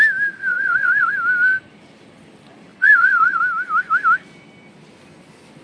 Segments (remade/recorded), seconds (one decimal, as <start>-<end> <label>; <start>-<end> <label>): 0.0-0.5 recorded; 0.5-1.1 remade; 1.1-2.7 recorded; 2.7-3.4 remade; 3.4-5.6 recorded